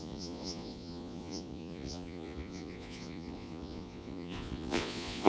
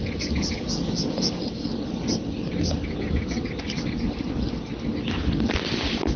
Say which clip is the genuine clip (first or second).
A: second